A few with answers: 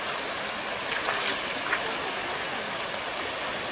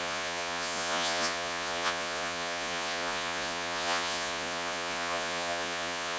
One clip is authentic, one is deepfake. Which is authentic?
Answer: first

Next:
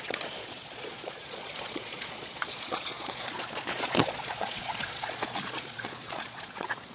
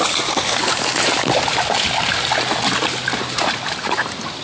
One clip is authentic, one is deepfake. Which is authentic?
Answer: second